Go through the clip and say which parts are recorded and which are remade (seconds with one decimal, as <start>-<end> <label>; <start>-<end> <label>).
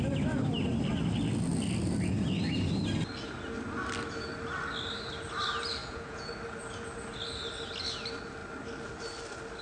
0.0-5.8 recorded; 5.8-6.3 remade; 6.3-9.6 recorded